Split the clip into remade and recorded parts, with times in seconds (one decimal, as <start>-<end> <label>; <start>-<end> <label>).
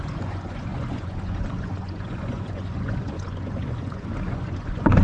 0.0-5.0 remade